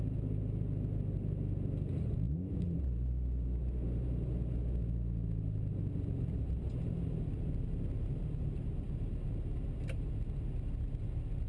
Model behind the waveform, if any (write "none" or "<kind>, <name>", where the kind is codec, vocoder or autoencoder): none